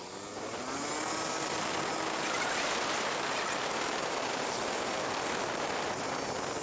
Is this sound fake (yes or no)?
no